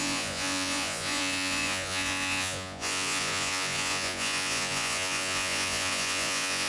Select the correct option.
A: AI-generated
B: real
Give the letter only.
A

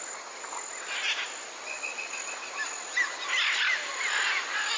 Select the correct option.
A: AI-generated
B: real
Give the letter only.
B